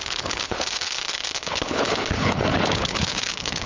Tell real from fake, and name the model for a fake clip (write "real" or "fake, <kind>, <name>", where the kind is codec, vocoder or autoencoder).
fake, codec, HILCodec